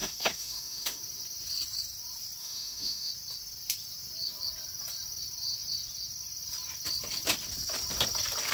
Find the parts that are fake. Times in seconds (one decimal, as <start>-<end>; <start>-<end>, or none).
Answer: 0.0-1.0; 2.4-3.1